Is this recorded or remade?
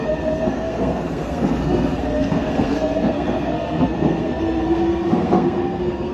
remade